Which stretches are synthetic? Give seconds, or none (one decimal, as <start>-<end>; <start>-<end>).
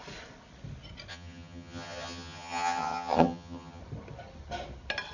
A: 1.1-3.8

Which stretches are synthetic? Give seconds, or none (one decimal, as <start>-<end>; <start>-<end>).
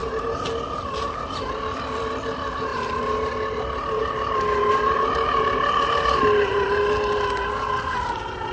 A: none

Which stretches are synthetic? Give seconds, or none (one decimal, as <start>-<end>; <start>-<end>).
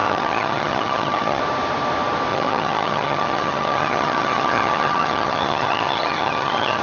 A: 0.0-1.4; 2.3-6.8